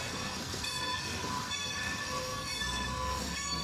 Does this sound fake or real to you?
fake